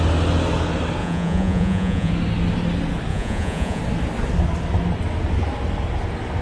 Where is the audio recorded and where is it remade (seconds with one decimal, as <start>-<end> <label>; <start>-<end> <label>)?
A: 0.0-1.0 recorded; 1.0-2.1 remade; 2.1-3.1 recorded; 3.1-3.8 remade; 3.8-6.4 recorded